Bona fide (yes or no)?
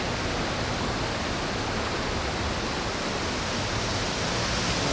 yes